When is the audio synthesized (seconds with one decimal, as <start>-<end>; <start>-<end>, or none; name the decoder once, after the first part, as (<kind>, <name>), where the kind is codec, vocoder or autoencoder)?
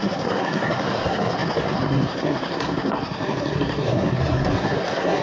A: 0.0-5.2 (codec, SNAC)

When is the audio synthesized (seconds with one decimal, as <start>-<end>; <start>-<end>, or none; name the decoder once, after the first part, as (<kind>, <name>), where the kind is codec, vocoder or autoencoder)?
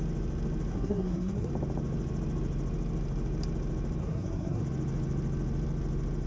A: 0.7-1.5 (codec, SNAC); 4.0-4.6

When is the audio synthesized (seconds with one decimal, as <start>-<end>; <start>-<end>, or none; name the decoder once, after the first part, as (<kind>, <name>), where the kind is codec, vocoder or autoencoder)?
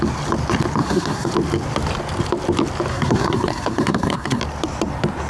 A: 0.8-1.3 (codec, SNAC); 2.9-4.4